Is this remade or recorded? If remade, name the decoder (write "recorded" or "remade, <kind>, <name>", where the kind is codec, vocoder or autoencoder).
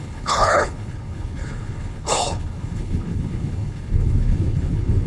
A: remade, codec, HILCodec